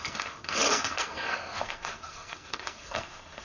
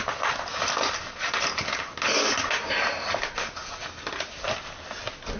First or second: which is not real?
first